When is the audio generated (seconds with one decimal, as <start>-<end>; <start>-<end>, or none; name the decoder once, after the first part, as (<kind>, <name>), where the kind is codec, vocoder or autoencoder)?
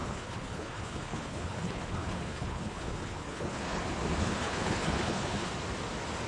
0.0-3.8 (codec, HILCodec); 4.2-5.5